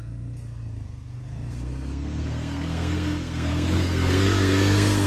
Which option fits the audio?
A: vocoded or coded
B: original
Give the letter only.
A